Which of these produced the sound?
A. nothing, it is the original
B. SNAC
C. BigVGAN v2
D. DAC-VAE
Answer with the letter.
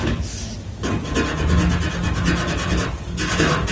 A